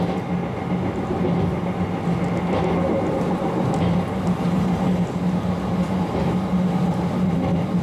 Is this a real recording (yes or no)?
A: yes